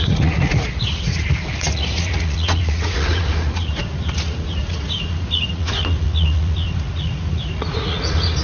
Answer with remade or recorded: remade